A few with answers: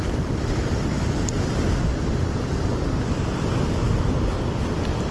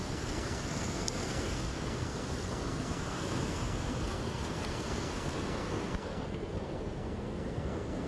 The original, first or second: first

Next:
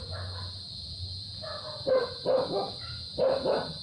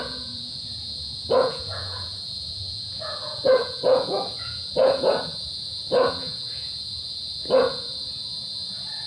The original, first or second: first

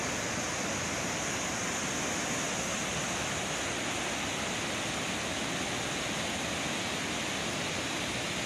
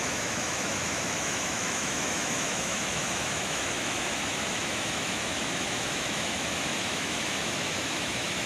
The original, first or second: first